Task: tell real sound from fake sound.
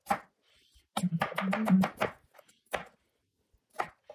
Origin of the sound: real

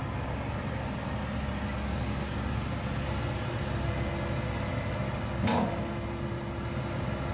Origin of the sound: real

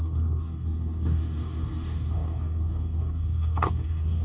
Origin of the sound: fake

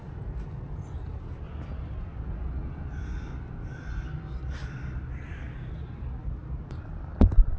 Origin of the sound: real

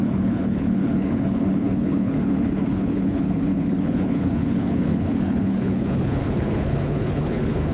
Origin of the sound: fake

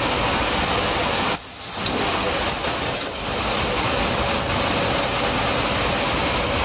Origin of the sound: real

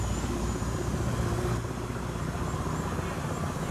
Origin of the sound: real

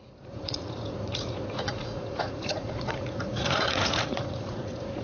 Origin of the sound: fake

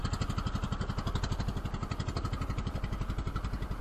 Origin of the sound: real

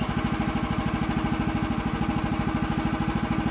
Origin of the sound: real